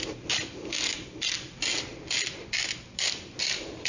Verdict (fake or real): real